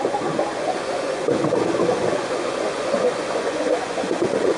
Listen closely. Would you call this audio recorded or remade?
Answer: remade